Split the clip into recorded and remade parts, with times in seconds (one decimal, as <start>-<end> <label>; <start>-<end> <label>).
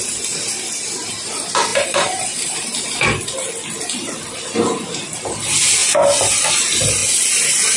0.0-1.7 recorded; 1.7-3.5 remade; 3.5-7.8 recorded